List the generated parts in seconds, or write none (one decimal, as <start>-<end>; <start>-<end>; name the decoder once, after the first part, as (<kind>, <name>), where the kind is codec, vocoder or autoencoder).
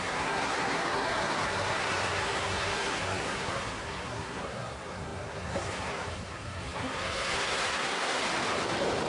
0.0-8.2 (codec, SNAC)